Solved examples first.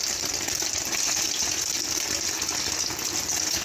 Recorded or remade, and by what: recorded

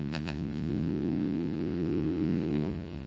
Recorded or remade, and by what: remade, vocoder, Vocos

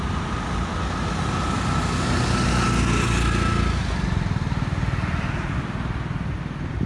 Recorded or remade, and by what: recorded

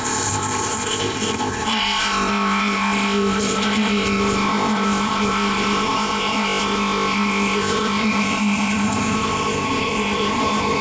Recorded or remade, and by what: remade, codec, ZipCodec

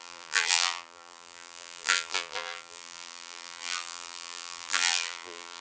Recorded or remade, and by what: remade, vocoder, BigVGAN v2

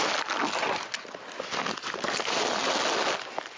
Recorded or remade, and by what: recorded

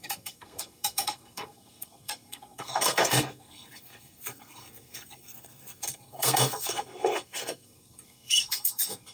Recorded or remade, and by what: remade, codec, SNAC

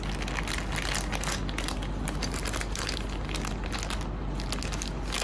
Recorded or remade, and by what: recorded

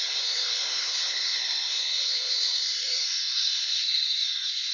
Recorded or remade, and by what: remade, codec, SNAC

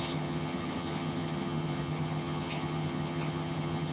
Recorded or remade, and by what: remade, vocoder, HiFi-GAN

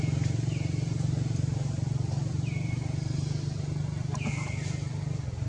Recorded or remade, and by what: recorded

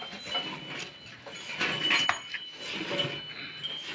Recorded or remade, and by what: recorded